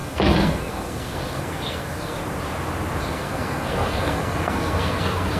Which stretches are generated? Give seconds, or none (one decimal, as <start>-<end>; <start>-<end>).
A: 0.0-2.2; 3.0-5.4